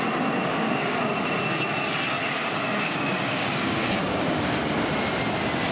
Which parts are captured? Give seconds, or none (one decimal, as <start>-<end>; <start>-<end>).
0.0-0.5; 1.1-2.2; 4.4-5.7